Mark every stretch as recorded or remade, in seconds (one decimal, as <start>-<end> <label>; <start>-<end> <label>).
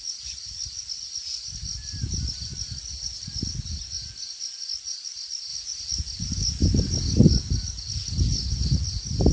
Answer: 0.0-9.3 recorded